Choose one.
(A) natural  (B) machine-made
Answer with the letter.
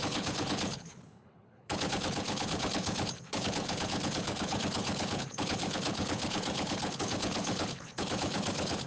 B